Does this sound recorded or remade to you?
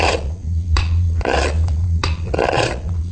remade